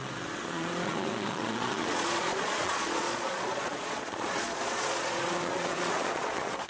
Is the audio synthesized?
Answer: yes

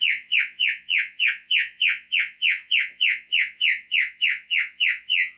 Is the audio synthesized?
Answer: yes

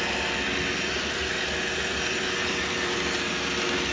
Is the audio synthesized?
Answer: no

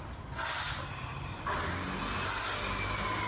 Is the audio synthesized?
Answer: no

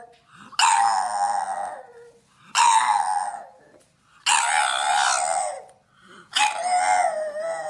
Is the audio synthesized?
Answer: no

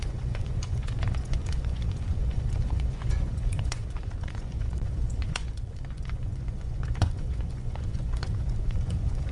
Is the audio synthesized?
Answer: yes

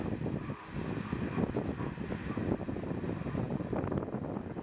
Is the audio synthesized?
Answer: no